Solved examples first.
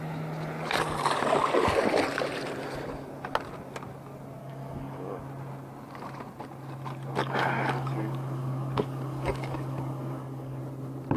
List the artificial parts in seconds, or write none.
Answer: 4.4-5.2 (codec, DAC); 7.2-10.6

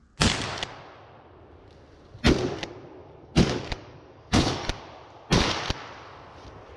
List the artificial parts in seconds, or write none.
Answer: 3.0-4.8 (codec, DAC)

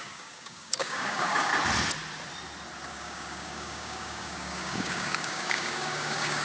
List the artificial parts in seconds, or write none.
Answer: 0.0-1.5 (codec, DAC); 2.9-6.4

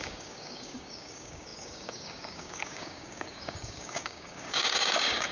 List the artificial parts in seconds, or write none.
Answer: 0.0-5.3 (codec, DAC)

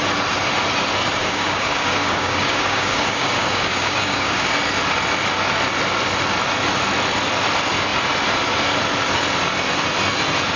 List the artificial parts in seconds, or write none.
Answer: 1.2-4.5 (codec, DAC)

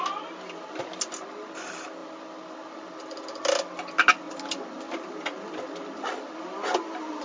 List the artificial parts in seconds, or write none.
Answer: none

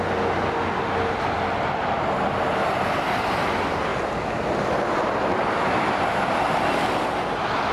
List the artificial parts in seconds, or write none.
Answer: 5.3-5.9 (codec, DAC)

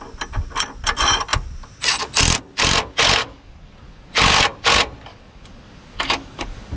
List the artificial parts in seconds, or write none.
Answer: 3.2-4.1 (codec, DAC); 5.1-6.8